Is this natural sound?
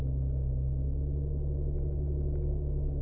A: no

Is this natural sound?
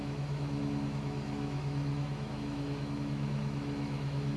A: no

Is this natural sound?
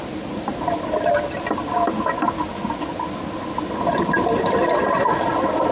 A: yes